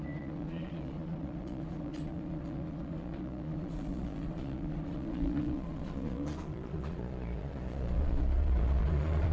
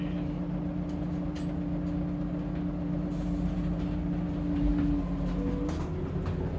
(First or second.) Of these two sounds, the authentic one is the second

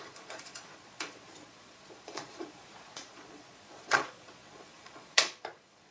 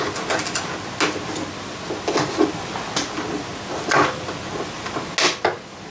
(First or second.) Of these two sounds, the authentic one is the second